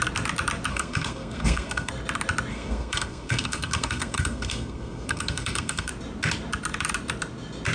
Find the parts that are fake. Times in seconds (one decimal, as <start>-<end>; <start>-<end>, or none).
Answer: 0.7-1.9; 2.5-5.9